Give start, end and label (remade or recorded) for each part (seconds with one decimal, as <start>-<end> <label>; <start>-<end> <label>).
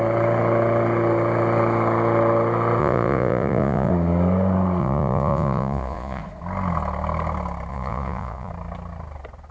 0.0-2.8 recorded; 2.8-3.9 remade; 3.9-4.8 recorded; 4.8-6.2 remade; 6.2-7.7 recorded; 7.7-8.5 remade; 8.5-9.5 recorded